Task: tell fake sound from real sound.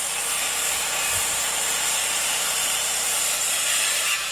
fake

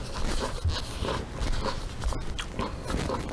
real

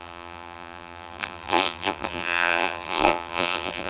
fake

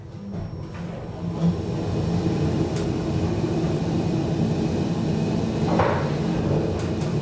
real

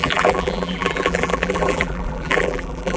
fake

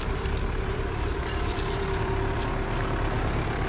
fake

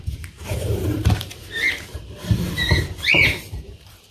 fake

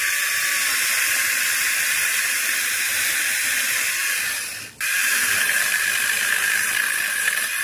fake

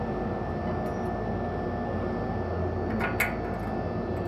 real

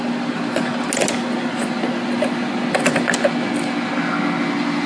real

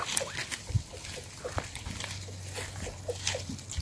real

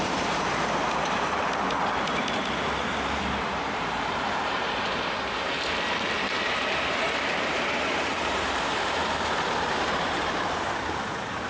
fake